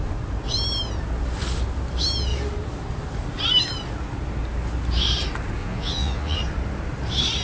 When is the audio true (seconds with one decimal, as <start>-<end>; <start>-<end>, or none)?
0.0-5.6; 6.4-7.4